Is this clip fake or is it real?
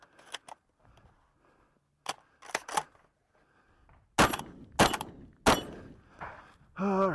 real